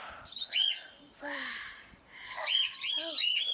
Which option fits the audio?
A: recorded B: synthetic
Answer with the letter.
B